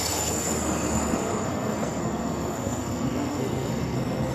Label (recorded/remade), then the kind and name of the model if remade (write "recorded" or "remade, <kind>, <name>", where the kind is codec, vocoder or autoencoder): remade, codec, SNAC